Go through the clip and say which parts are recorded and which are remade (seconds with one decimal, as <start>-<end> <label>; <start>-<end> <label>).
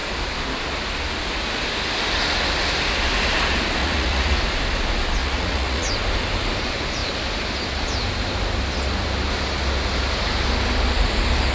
0.0-3.8 recorded; 3.8-4.4 remade; 4.4-5.2 recorded; 5.2-5.9 remade; 5.9-11.5 recorded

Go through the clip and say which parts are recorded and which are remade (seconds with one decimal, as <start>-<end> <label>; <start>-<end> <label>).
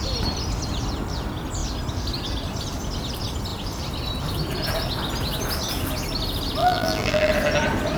0.0-6.6 recorded; 6.6-7.3 remade; 7.3-8.0 recorded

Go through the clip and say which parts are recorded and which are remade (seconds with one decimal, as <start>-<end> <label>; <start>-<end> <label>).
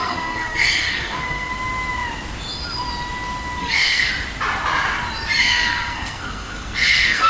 0.0-1.5 remade; 1.5-3.6 recorded; 3.6-4.1 remade; 4.1-5.4 recorded; 5.4-7.3 remade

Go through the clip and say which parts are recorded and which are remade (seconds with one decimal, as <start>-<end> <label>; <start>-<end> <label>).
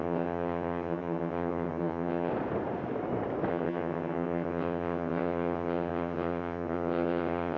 0.0-2.3 remade; 2.3-3.5 recorded; 3.5-7.6 remade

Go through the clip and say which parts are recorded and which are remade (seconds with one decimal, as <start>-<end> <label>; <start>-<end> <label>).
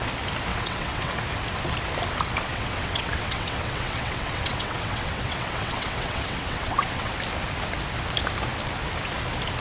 0.0-0.5 recorded; 0.5-1.2 remade; 1.2-2.5 recorded; 2.5-7.1 remade; 7.1-9.6 recorded